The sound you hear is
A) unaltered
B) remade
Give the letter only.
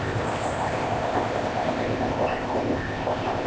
B